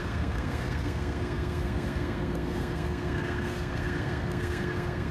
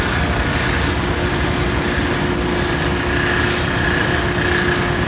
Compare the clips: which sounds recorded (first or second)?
second